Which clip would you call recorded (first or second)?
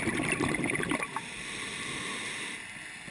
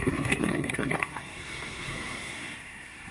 first